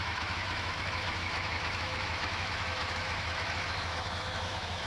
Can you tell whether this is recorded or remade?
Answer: remade